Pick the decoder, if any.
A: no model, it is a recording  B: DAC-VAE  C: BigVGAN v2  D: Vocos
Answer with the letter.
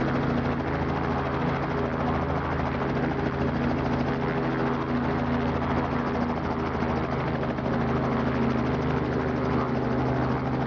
A